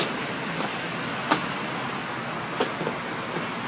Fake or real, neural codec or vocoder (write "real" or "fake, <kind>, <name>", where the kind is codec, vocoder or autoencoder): real